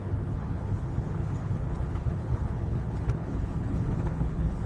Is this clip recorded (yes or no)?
no